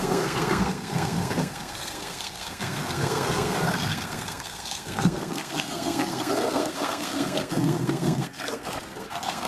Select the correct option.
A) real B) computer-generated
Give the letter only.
B